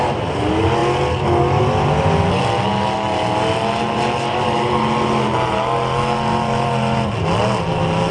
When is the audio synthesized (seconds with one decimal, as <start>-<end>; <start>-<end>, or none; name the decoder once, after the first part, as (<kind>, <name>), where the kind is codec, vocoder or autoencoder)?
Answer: none